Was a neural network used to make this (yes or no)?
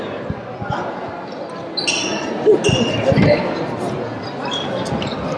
no